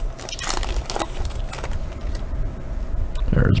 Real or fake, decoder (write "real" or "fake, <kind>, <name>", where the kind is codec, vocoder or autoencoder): real